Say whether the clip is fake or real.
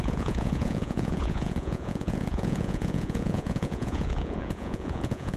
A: fake